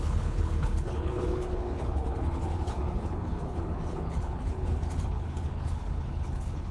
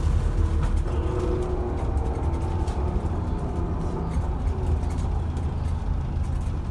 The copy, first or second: first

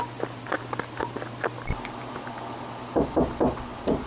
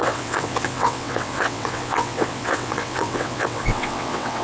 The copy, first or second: second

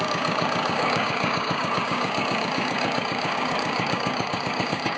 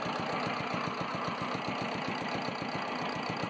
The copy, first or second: first